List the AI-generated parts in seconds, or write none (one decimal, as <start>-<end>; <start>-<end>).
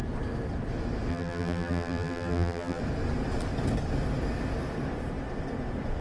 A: 1.1-2.8